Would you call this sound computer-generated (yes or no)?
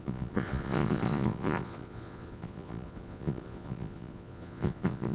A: yes